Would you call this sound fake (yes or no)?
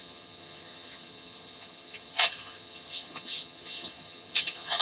yes